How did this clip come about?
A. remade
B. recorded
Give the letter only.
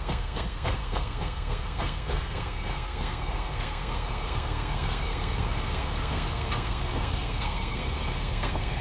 A